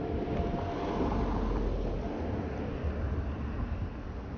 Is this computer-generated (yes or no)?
no